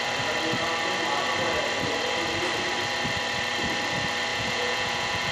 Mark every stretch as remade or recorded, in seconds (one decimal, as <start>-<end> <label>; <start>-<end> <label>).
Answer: 0.0-4.3 recorded; 4.3-5.3 remade